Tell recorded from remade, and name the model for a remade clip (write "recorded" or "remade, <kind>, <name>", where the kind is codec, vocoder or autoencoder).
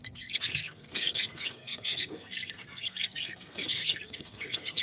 remade, codec, SNAC